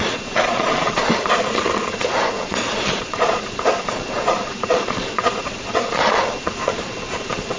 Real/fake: fake